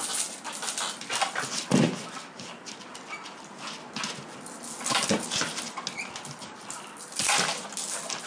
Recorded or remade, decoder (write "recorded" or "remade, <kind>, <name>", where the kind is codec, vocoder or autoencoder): recorded